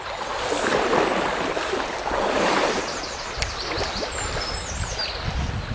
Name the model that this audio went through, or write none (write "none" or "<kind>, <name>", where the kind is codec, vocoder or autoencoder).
none